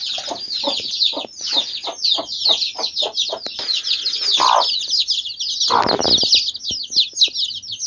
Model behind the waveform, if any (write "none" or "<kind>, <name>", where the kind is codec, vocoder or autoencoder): none